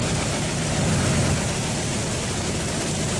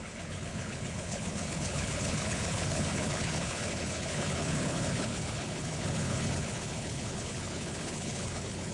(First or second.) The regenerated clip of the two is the second